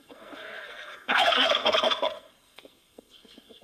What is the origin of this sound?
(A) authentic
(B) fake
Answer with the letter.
B